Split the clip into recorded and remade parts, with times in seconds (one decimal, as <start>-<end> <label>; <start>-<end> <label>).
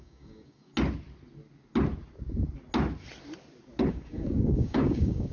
0.0-0.7 remade; 0.7-3.9 recorded; 3.9-5.3 remade